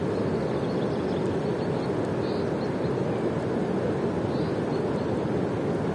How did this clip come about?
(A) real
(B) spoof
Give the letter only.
A